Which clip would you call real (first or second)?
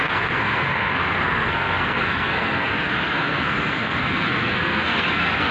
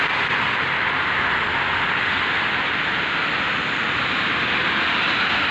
second